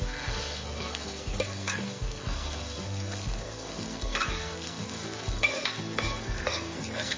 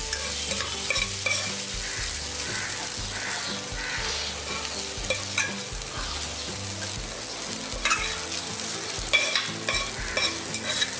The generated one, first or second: first